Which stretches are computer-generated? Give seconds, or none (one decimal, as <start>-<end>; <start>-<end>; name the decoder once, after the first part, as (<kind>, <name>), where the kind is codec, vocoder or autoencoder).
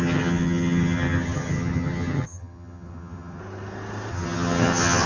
0.0-3.4 (vocoder, HiFi-GAN); 4.1-5.1